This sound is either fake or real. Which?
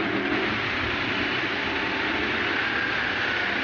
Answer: real